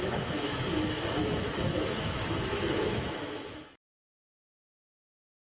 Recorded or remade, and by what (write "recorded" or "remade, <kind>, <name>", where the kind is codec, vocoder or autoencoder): remade, autoencoder, DAC-VAE